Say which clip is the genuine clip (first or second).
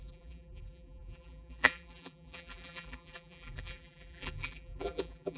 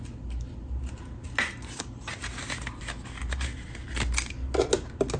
second